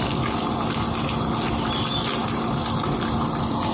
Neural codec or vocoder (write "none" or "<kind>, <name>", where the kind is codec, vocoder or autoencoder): none